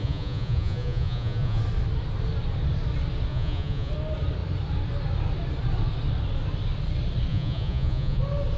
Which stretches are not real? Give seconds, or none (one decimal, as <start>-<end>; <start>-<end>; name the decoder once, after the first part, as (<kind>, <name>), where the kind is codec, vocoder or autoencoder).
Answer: 0.0-1.6 (vocoder, Vocos); 3.3-3.9; 7.3-8.2